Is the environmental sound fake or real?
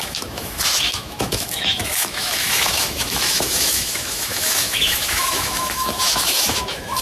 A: fake